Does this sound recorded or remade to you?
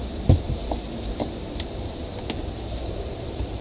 remade